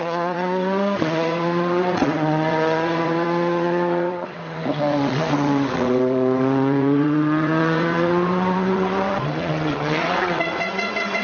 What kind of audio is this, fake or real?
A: fake